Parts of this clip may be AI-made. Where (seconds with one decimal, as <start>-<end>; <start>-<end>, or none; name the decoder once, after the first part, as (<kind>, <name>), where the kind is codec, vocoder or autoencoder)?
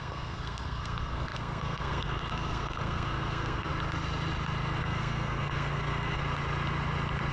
0.0-3.7 (codec, SNAC); 4.8-6.2